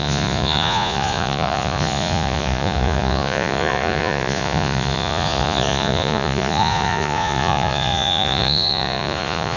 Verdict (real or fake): fake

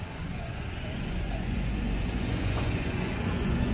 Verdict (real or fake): fake